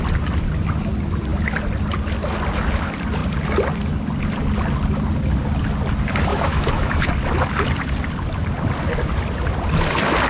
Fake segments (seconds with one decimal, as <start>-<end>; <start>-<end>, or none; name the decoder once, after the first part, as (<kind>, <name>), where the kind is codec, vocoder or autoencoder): 6.3-7.1 (autoencoder, DAC-VAE)